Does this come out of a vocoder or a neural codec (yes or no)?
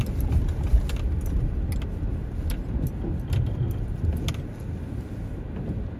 no